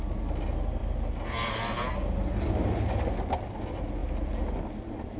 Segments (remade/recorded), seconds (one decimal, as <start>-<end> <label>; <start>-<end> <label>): 0.0-5.2 recorded